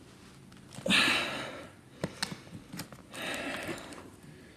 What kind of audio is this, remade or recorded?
recorded